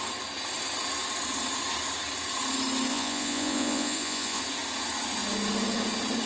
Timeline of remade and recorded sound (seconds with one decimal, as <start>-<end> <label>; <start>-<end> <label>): 0.0-2.9 recorded; 2.9-4.4 remade; 4.4-6.3 recorded